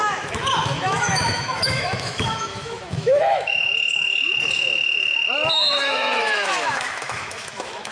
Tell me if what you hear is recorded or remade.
remade